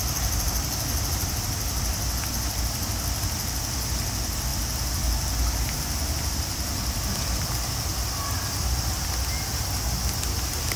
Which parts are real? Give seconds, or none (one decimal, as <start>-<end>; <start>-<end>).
0.0-10.8